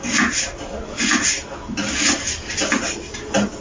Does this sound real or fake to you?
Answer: real